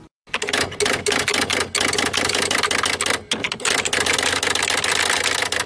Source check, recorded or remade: recorded